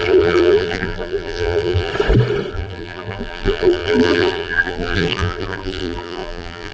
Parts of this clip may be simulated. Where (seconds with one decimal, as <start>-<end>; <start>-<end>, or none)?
0.0-1.9; 2.5-6.7